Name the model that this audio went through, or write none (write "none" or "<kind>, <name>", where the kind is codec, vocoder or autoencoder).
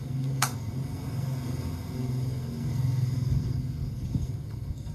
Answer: codec, SNAC